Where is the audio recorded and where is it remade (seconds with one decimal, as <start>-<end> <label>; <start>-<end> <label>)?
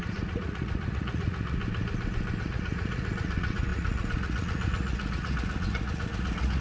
0.0-1.6 remade; 1.6-2.4 recorded; 2.4-6.6 remade